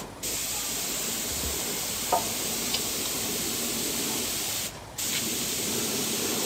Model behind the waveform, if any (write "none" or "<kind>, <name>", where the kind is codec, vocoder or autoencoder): none